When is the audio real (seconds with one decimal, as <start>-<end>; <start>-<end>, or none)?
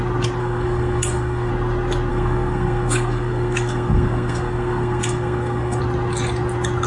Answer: 0.0-0.4; 1.5-2.1; 5.8-6.9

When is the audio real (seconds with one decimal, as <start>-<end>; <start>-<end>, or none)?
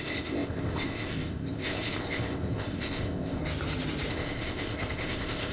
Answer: 3.4-4.1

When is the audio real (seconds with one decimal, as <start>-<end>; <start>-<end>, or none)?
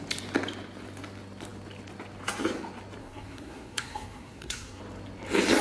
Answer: 0.0-3.0; 4.8-5.6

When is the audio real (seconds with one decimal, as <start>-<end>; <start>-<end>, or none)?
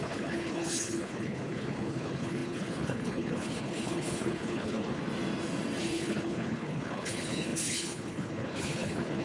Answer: 5.0-5.8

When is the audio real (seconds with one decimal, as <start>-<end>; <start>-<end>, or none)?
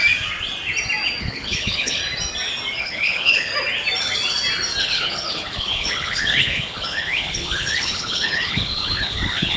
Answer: 0.0-1.2; 2.0-2.8; 3.5-4.8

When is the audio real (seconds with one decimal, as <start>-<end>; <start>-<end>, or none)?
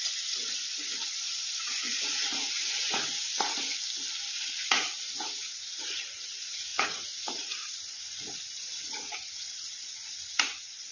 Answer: 3.7-4.3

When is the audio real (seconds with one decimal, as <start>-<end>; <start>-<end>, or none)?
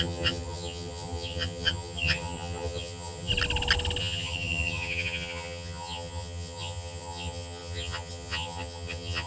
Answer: 3.3-4.0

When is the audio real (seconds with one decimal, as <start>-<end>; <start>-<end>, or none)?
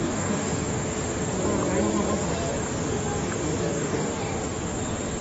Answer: 0.5-3.6; 4.1-5.2